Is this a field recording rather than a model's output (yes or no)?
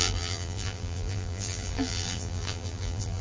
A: no